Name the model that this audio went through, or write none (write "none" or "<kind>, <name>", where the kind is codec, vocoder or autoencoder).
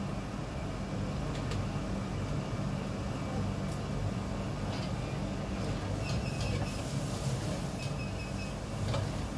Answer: none